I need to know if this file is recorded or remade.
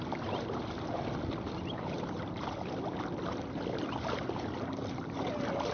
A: recorded